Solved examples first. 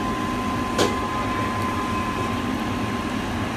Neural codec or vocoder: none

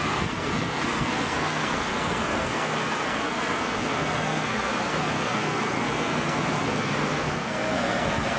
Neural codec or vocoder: codec, SNAC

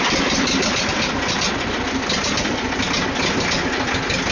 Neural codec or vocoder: none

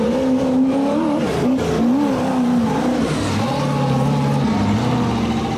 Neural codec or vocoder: none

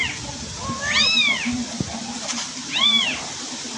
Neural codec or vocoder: none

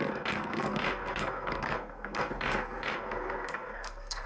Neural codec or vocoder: codec, SNAC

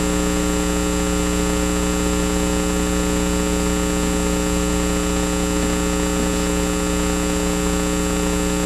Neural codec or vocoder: none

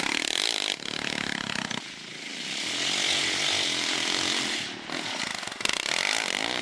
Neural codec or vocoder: none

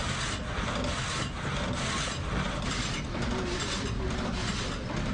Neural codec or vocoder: none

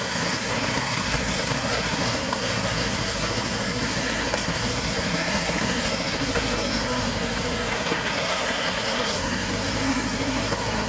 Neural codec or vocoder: codec, SNAC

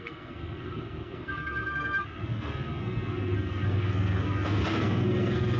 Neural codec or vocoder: codec, SNAC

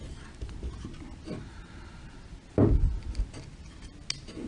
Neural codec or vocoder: none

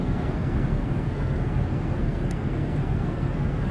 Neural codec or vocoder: codec, SNAC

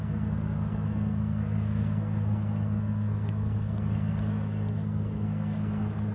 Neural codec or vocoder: codec, SNAC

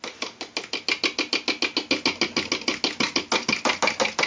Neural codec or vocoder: none